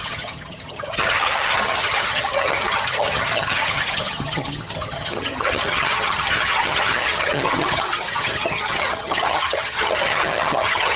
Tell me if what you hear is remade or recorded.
remade